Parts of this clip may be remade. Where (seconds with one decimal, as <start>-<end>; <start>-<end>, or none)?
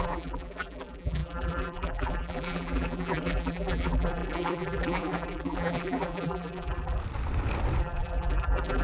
0.0-7.0; 7.8-8.8